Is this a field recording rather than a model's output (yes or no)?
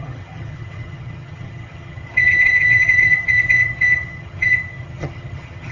no